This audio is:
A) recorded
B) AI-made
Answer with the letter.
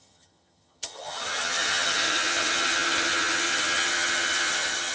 B